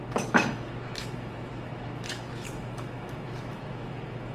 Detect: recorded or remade remade